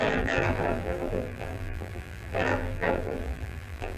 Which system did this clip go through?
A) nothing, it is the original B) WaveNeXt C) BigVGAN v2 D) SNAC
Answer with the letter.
C